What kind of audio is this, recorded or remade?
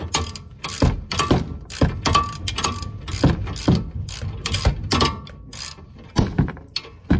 recorded